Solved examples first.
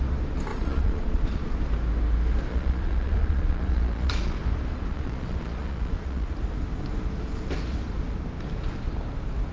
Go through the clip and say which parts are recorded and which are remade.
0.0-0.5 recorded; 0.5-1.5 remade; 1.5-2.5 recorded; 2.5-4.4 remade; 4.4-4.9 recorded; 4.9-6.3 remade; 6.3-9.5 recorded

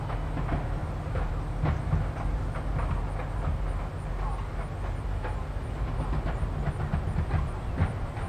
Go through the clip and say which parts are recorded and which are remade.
0.0-8.3 recorded

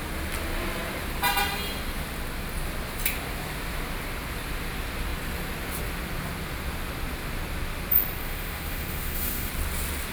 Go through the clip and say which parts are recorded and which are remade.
0.0-8.2 recorded; 8.2-9.5 remade; 9.5-10.1 recorded

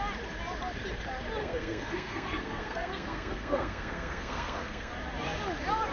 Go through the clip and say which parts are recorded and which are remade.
0.0-1.4 recorded; 1.4-4.9 remade; 4.9-5.9 recorded